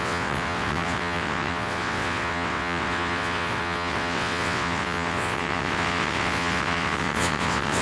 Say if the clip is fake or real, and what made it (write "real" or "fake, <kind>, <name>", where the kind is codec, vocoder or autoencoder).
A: fake, vocoder, WaveNeXt